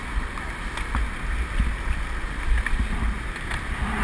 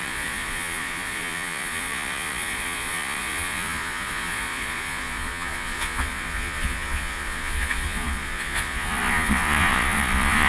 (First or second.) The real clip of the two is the first